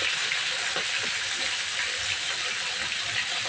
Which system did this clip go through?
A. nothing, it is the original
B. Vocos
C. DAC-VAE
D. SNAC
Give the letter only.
A